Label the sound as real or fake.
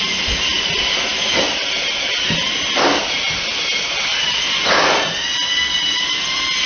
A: real